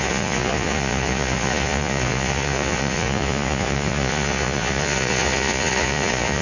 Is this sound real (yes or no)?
no